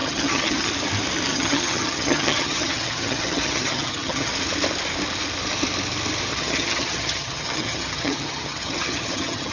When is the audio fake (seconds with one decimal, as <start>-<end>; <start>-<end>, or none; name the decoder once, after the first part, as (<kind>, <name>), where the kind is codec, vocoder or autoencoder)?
0.0-0.7 (vocoder, HiFi-GAN); 1.3-4.3; 6.3-9.5